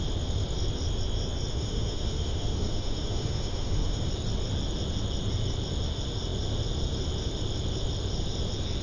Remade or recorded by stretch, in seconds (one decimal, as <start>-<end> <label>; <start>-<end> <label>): 0.0-1.5 recorded; 1.5-4.1 remade; 4.1-8.8 recorded